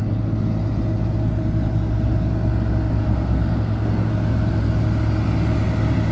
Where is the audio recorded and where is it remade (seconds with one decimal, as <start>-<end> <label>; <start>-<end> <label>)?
0.0-3.0 recorded; 3.0-4.1 remade; 4.1-6.1 recorded